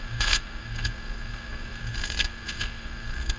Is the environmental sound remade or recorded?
remade